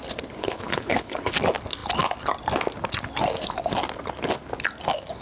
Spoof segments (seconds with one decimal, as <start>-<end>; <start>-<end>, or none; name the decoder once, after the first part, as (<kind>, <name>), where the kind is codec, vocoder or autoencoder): 0.4-1.3 (codec, HILCodec)